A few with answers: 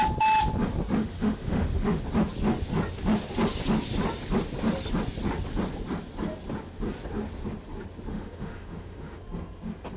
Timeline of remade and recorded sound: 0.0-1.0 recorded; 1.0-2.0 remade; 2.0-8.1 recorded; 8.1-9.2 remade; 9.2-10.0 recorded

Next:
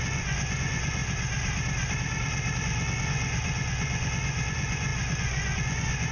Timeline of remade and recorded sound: 0.0-1.0 remade; 1.0-2.6 recorded; 2.6-6.1 remade

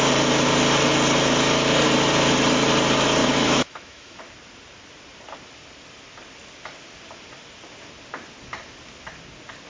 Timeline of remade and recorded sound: 0.0-3.2 recorded; 3.2-4.2 remade; 4.2-9.7 recorded

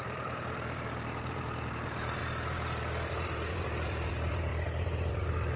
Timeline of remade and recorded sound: 0.0-2.2 remade; 2.2-3.5 recorded; 3.5-4.5 remade; 4.5-5.1 recorded; 5.1-5.6 remade

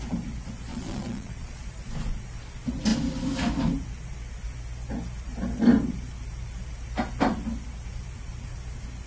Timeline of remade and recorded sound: 0.0-0.7 recorded; 0.7-1.6 remade; 1.6-9.1 recorded

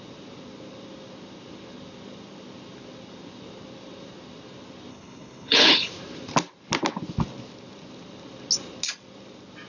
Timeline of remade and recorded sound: 0.0-4.9 recorded; 4.9-5.9 remade; 5.9-9.7 recorded